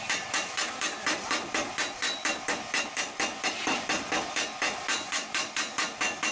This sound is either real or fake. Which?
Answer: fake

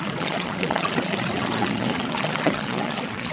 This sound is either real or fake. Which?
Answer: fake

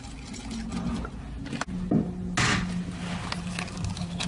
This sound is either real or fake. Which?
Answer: real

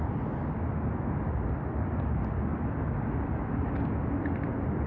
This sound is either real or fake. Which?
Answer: real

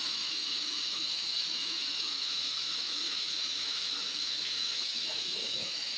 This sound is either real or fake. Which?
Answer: fake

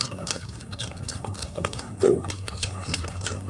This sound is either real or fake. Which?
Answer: fake